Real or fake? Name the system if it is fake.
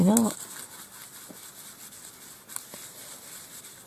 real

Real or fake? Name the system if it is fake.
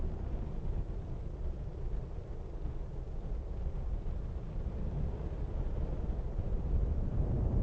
real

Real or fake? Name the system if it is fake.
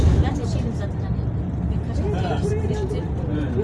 real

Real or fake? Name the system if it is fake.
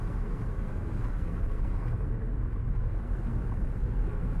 fake, codec, SNAC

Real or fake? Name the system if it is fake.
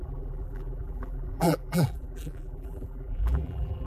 fake, vocoder, BigVGAN v2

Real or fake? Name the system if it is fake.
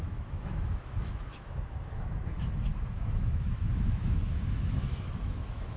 fake, autoencoder, DAC-VAE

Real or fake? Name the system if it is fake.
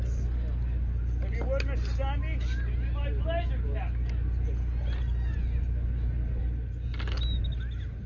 real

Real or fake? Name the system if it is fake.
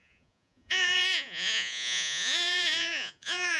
fake, vocoder, Vocos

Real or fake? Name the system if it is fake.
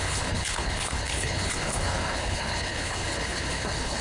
fake, codec, HILCodec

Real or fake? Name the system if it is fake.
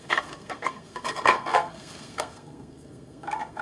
fake, codec, SNAC